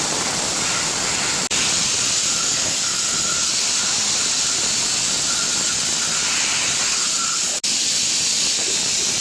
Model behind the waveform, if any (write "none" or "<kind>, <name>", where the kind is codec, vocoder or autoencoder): none